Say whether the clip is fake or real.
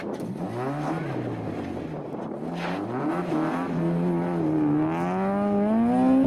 real